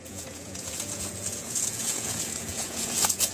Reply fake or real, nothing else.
fake